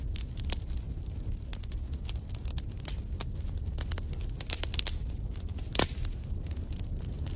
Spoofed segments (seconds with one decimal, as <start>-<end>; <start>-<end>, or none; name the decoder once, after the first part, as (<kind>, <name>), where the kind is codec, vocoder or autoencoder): none